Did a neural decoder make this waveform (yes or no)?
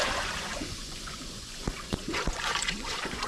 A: yes